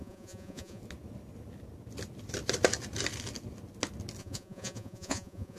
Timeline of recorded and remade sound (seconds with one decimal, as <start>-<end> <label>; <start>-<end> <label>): 0.0-0.8 remade; 0.8-4.2 recorded; 4.2-5.6 remade